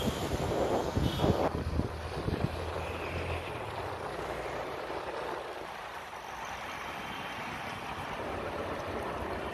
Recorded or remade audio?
remade